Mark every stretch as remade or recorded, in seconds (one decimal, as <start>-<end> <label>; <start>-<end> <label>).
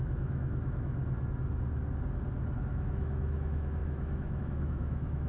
0.0-1.0 remade; 1.0-2.7 recorded; 2.7-5.3 remade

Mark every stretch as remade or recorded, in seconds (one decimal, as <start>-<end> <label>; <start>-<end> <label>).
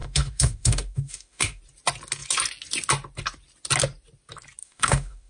0.0-1.6 remade; 1.6-4.6 recorded; 4.6-5.3 remade